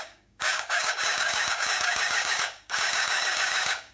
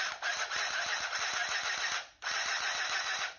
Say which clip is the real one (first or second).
second